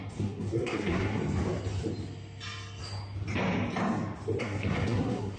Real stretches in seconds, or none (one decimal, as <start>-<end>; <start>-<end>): 1.2-4.4